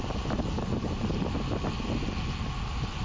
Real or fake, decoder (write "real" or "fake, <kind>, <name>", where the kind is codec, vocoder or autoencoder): real